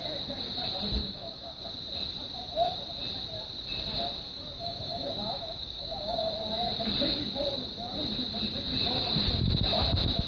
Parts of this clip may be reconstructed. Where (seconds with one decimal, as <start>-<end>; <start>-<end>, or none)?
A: 1.0-1.6; 4.3-6.3